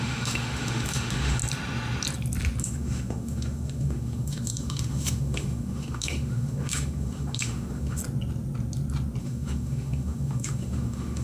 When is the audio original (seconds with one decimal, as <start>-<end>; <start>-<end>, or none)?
1.4-2.6; 8.0-9.2